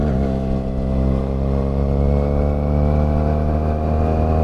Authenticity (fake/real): real